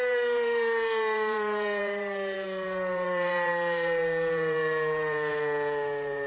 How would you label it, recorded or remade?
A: remade